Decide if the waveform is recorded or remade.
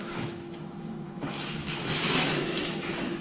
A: remade